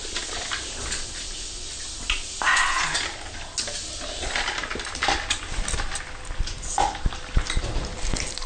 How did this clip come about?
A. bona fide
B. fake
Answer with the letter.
A